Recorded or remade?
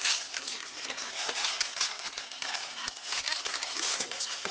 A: remade